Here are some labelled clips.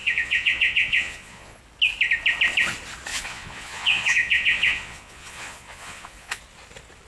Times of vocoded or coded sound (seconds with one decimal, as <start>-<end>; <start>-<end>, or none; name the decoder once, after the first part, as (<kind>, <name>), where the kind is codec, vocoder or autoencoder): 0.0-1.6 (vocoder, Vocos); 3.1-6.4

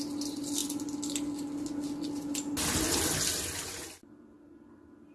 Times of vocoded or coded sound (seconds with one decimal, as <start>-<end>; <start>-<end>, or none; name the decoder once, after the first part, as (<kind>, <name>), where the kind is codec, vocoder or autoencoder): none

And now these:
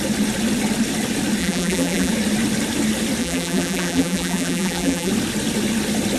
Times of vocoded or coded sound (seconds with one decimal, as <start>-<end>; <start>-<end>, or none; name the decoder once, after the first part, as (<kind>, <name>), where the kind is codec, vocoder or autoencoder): 1.4-2.1 (vocoder, BigVGAN v2); 3.2-5.1

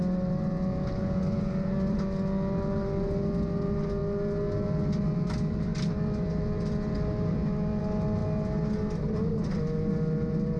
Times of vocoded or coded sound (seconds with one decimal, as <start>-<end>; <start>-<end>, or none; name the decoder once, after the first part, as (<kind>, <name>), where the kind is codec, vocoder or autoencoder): none

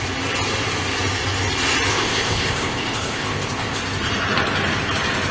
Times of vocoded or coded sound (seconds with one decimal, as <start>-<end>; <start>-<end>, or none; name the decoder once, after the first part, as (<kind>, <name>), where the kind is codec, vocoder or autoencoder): 1.9-3.8 (codec, ZipCodec)